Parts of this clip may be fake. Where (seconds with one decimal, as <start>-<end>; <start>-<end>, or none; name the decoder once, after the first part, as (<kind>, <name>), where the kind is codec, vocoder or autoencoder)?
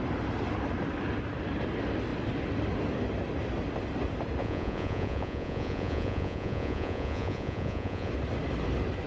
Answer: 4.4-8.1 (vocoder, Vocos)